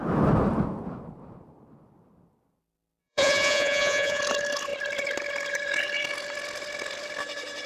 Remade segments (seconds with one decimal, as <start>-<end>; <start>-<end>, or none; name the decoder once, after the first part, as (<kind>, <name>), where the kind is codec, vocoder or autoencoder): 3.0-4.2 (vocoder, Vocos)